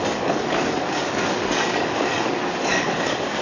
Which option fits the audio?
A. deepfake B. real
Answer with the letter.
A